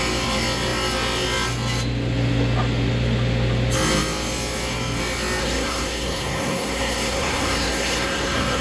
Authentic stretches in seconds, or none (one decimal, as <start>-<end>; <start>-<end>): 0.0-5.4